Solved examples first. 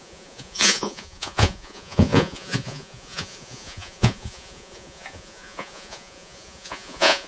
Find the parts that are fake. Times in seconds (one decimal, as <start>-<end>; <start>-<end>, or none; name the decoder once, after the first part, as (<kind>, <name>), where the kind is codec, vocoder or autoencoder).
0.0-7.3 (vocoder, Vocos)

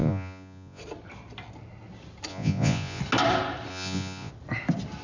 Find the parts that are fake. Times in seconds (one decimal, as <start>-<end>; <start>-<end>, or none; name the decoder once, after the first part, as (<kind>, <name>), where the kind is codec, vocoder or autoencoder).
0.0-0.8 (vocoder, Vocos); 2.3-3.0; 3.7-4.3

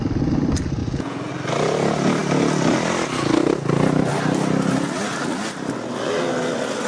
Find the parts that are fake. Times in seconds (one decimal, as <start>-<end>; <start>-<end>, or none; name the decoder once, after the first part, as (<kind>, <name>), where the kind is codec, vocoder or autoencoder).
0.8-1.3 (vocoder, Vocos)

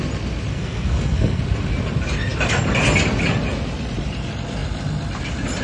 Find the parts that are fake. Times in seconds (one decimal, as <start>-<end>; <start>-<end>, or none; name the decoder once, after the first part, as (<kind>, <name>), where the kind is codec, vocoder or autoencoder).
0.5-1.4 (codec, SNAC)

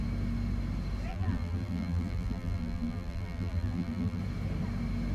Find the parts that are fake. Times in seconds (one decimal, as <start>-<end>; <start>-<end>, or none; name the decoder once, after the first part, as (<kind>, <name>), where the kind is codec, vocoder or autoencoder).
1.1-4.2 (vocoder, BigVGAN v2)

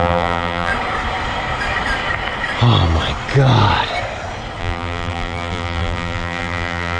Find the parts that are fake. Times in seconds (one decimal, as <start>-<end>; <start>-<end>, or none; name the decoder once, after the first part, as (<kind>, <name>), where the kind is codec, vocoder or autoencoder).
0.0-0.7 (vocoder, BigVGAN v2); 4.6-7.0

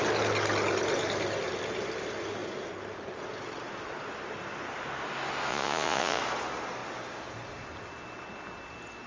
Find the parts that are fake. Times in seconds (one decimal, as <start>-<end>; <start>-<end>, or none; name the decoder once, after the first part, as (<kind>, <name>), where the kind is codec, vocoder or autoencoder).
5.5-6.2 (vocoder, Vocos)